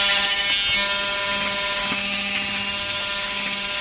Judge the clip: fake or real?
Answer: real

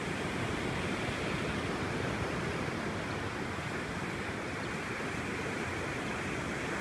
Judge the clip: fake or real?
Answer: real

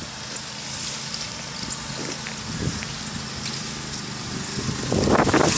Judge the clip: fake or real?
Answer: real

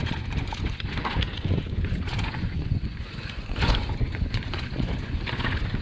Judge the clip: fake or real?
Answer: fake